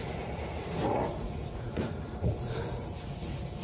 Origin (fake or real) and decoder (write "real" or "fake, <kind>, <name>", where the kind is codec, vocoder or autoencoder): fake, vocoder, Vocos